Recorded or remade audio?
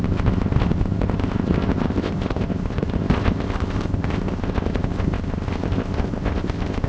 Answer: remade